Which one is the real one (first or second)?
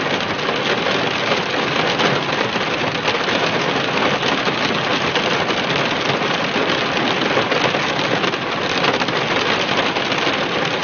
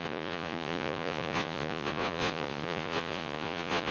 first